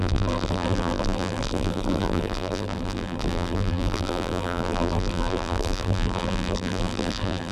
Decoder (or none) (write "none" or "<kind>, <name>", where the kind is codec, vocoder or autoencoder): vocoder, BigVGAN v2